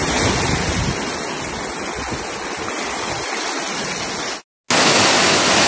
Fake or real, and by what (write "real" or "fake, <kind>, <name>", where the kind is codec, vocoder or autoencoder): real